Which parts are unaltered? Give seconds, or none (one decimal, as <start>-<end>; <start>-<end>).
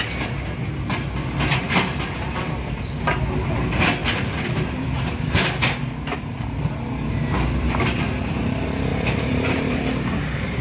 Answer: 0.0-8.9